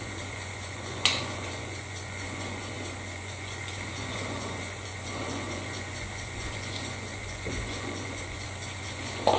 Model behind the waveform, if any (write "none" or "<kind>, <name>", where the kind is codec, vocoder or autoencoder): vocoder, Vocos